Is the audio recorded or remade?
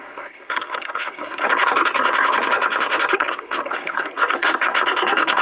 remade